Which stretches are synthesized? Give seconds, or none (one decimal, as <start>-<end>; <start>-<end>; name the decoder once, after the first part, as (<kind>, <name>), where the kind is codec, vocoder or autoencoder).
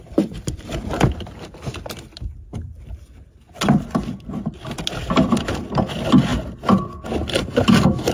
0.0-6.3 (vocoder, BigVGAN v2)